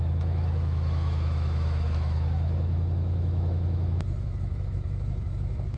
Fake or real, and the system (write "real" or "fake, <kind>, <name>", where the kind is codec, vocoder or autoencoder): fake, autoencoder, DAC-VAE